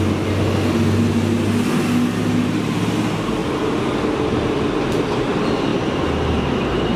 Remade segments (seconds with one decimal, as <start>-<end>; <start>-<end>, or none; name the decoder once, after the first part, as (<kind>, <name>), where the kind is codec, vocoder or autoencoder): 3.4-4.4 (vocoder, BigVGAN v2)